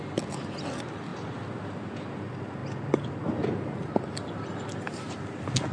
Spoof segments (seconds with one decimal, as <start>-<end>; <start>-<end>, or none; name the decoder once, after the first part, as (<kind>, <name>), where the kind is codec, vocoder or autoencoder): none